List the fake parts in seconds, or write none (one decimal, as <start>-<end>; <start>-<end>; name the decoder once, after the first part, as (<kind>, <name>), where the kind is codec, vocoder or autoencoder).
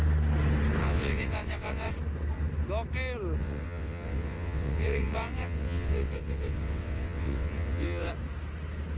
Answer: 0.8-1.9 (vocoder, WaveNeXt); 3.4-8.1